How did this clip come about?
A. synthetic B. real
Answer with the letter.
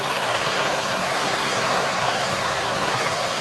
A